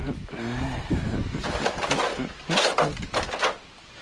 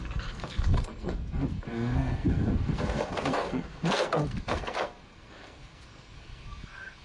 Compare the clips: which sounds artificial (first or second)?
second